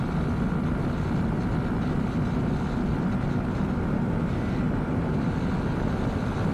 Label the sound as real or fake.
real